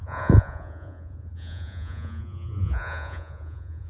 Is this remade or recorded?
remade